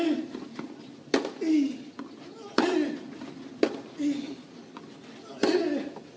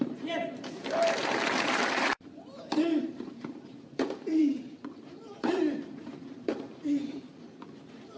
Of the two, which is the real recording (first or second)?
first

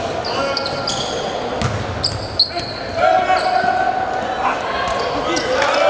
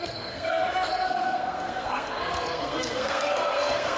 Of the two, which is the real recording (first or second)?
first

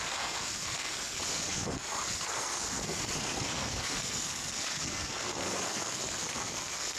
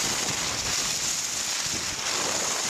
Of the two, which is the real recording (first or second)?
second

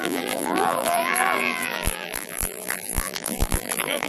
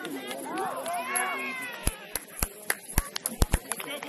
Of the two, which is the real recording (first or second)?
second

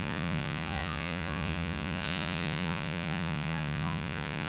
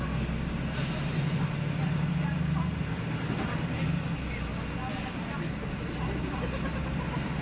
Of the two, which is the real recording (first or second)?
second